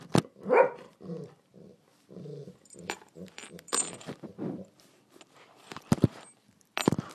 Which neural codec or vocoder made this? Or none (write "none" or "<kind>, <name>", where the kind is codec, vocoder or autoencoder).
vocoder, BigVGAN v2